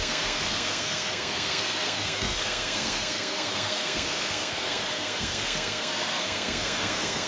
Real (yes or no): no